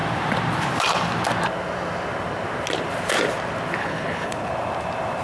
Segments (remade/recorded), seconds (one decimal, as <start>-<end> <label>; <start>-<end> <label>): 0.0-3.8 recorded; 3.8-4.5 remade; 4.5-5.2 recorded